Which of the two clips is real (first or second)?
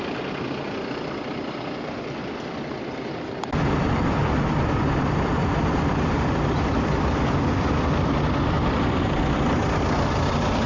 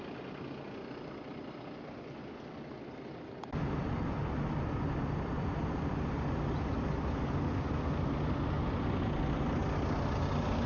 second